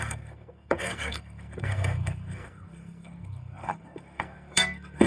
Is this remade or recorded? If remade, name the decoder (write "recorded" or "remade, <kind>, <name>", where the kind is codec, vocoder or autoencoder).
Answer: remade, codec, SNAC